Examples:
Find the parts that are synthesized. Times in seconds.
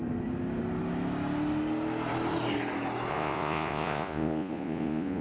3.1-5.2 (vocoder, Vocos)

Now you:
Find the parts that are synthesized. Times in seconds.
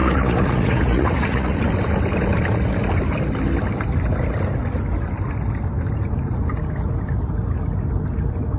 0.0-1.6 (vocoder, Vocos)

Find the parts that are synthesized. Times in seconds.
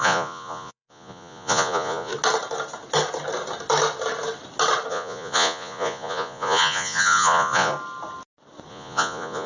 0.0-2.1 (vocoder, Vocos); 4.9-7.7; 8.7-9.5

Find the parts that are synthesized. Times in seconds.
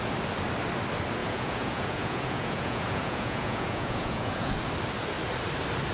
1.2-4.5 (vocoder, Vocos)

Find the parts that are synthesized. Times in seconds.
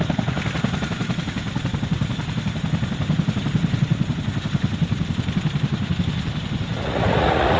6.7-7.6 (vocoder, Vocos)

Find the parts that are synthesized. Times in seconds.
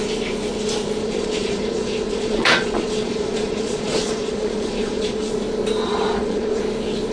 1.0-5.3 (vocoder, Vocos); 5.8-6.6